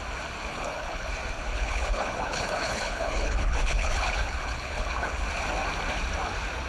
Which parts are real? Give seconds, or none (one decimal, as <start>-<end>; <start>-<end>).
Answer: 0.0-0.5; 1.1-1.5; 5.2-6.7